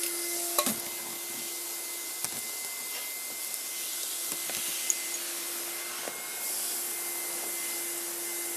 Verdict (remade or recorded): recorded